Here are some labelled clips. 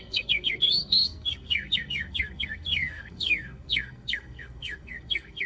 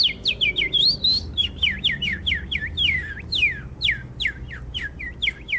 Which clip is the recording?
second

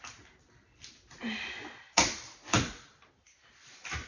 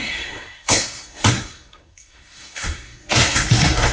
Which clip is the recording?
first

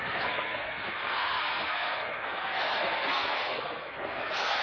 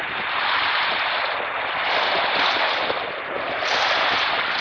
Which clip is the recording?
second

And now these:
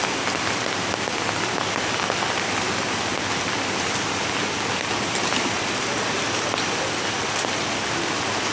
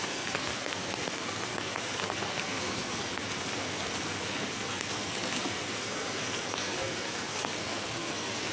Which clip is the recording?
first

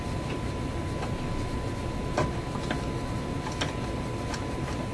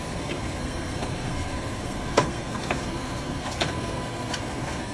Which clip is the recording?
first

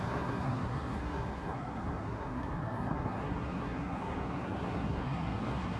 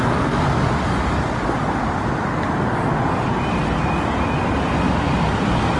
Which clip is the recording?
second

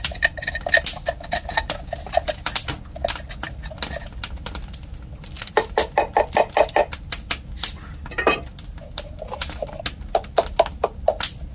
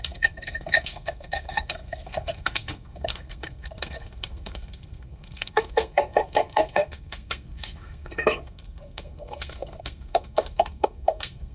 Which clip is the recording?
first